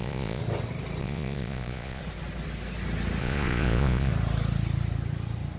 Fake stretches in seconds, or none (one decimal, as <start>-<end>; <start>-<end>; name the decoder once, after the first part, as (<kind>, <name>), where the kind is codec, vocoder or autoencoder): 0.0-0.4 (vocoder, Vocos); 1.0-2.0; 3.2-4.1